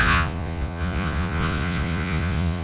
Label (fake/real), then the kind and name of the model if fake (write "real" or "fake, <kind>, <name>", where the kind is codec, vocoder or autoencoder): fake, vocoder, Vocos